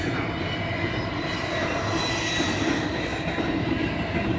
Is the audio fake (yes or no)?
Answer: no